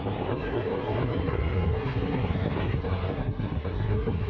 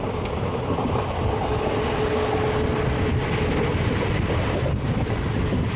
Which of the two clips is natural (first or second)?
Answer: second